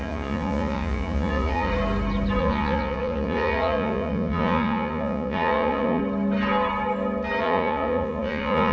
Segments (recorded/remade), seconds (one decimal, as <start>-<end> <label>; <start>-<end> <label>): 0.0-1.7 remade; 1.7-2.4 recorded; 2.4-6.0 remade; 6.0-7.4 recorded; 7.4-8.7 remade